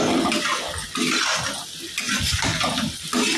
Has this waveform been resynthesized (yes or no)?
no